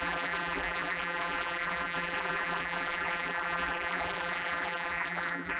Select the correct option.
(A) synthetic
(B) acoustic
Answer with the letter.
A